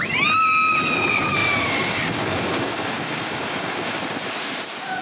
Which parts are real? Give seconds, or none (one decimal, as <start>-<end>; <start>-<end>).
0.0-1.4; 4.0-5.0